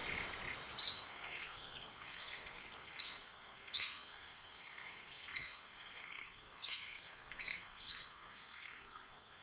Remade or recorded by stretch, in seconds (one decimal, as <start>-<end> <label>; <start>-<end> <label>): 0.0-0.9 recorded; 0.9-9.4 remade